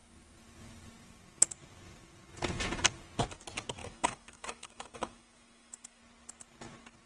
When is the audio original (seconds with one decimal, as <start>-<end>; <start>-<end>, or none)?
0.0-3.8; 6.0-7.1